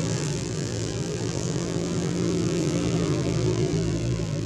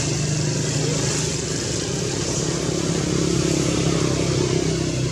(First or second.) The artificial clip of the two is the first